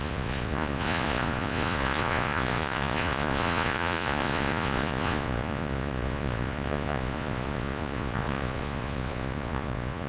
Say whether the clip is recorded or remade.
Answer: remade